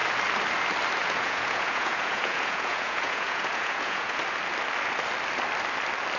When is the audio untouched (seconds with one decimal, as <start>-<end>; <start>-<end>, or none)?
0.0-1.0; 4.2-6.2